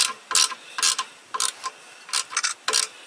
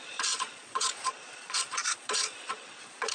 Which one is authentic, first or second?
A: first